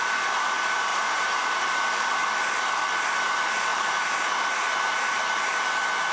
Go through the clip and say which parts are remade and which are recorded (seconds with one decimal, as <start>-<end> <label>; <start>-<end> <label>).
0.0-0.9 recorded; 0.9-1.6 remade; 1.6-3.7 recorded; 3.7-5.2 remade; 5.2-6.1 recorded